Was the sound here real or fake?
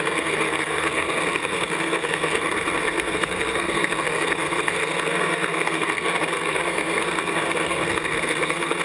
fake